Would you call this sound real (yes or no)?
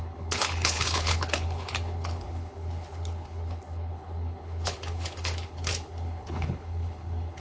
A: no